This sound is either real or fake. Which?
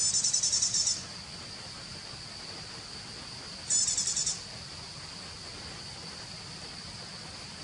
real